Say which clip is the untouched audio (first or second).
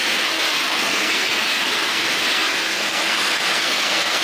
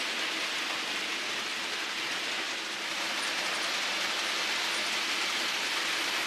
second